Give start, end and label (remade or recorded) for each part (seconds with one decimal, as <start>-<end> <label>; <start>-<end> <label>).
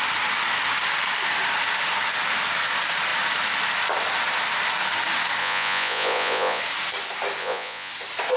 0.0-5.4 recorded; 5.4-6.6 remade; 6.6-7.4 recorded; 7.4-7.9 remade; 7.9-8.4 recorded